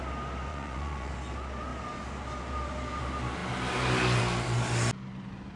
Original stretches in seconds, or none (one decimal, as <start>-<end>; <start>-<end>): 0.0-0.5; 1.1-5.6